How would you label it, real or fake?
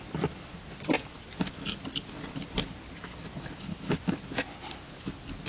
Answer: real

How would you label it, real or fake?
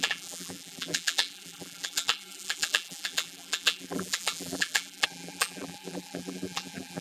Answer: fake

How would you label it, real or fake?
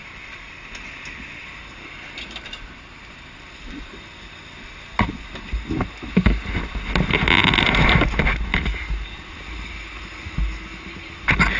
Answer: real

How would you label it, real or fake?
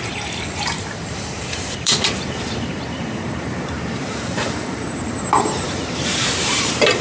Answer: fake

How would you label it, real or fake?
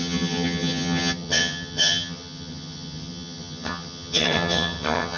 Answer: fake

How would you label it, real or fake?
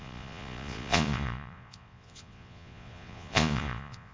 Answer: fake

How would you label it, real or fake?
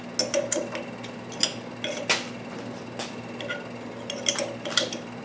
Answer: real